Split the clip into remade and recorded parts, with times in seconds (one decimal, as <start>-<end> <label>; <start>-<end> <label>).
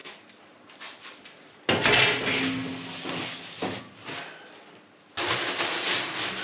0.0-6.4 recorded